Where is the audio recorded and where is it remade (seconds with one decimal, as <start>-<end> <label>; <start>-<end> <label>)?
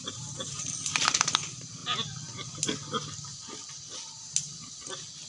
0.0-1.8 remade; 1.8-5.3 recorded